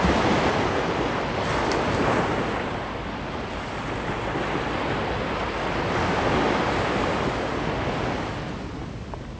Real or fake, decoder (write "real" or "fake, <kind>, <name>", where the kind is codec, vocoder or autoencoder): real